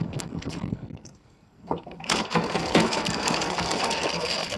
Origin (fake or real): fake